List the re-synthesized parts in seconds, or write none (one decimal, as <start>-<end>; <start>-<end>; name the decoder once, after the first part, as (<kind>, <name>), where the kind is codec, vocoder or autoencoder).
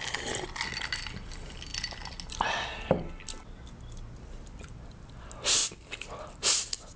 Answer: none